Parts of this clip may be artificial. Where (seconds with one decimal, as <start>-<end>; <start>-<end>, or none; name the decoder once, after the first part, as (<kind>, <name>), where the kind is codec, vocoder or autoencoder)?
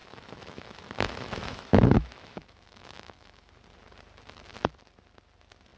0.0-3.5 (autoencoder, DAC-VAE)